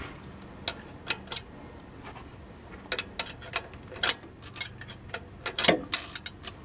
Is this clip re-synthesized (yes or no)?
no